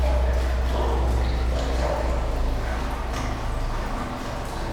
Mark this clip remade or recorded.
recorded